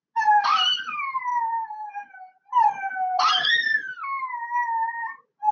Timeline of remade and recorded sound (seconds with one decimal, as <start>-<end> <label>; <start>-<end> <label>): 0.0-5.5 recorded